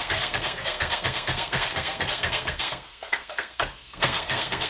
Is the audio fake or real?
fake